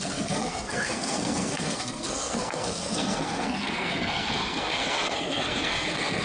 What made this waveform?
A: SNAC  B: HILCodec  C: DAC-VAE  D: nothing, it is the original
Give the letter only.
A